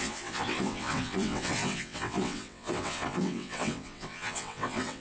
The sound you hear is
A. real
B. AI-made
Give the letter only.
B